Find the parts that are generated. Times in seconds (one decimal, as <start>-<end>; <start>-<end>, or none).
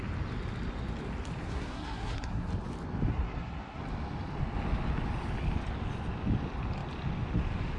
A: 1.4-2.5; 3.1-3.8